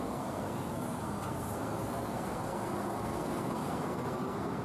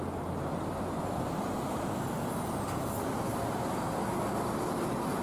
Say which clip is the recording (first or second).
second